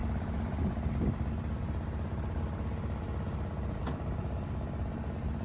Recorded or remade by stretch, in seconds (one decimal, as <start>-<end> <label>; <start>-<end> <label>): 0.0-5.4 recorded